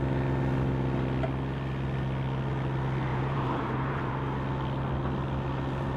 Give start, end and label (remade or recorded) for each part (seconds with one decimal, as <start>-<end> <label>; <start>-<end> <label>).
0.0-3.1 recorded; 3.1-4.1 remade; 4.1-6.0 recorded